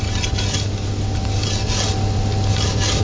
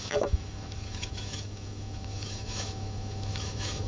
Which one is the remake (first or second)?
second